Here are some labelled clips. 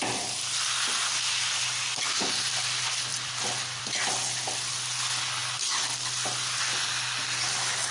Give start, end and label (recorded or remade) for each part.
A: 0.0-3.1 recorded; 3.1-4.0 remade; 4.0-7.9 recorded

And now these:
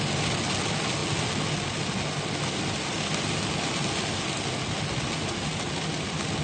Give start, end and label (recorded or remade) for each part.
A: 0.0-6.4 recorded

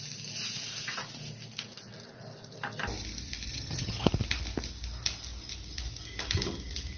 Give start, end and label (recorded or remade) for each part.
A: 0.0-3.5 recorded; 3.5-4.1 remade; 4.1-7.0 recorded

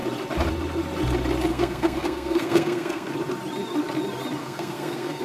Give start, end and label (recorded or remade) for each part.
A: 0.0-1.5 recorded; 1.5-3.1 remade; 3.1-4.4 recorded; 4.4-5.2 remade

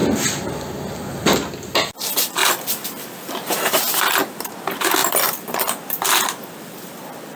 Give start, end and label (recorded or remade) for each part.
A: 0.0-0.5 remade; 0.5-2.4 recorded; 2.4-4.0 remade; 4.0-5.0 recorded; 5.0-7.4 remade

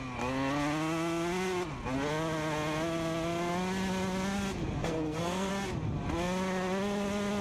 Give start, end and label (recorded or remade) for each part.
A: 0.0-4.8 recorded; 4.8-5.5 remade; 5.5-7.4 recorded

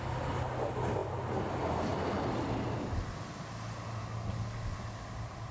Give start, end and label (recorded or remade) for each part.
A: 0.0-5.5 recorded

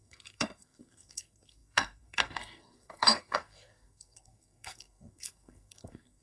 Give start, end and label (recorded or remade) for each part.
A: 0.0-6.2 remade